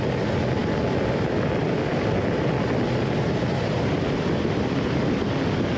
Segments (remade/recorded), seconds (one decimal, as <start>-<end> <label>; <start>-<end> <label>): 0.0-0.6 recorded; 0.6-2.6 remade; 2.6-5.8 recorded